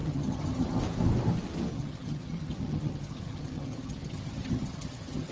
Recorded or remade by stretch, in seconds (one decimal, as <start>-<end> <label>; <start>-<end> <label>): 0.0-0.8 remade; 0.8-1.7 recorded; 1.7-5.3 remade